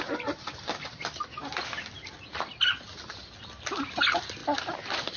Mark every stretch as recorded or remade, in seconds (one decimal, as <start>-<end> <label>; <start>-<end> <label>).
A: 0.0-5.2 recorded